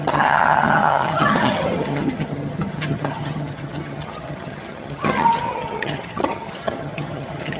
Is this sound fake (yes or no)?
yes